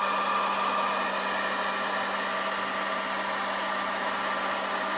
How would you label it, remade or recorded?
recorded